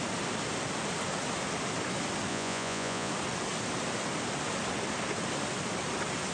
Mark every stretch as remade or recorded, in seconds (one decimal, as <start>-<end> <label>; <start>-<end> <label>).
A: 0.0-2.3 recorded; 2.3-3.1 remade; 3.1-6.3 recorded